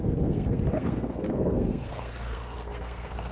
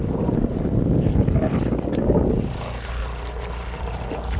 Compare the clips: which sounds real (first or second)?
second